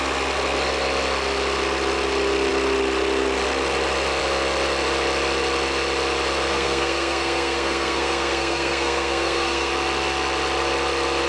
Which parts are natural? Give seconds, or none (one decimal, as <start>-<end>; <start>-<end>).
0.0-6.5; 9.7-11.3